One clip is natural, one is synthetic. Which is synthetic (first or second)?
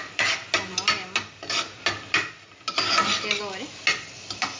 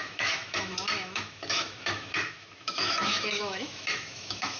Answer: second